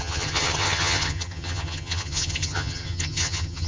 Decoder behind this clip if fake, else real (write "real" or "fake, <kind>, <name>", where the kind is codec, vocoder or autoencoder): fake, vocoder, HiFi-GAN